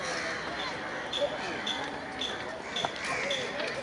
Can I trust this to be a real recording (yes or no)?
yes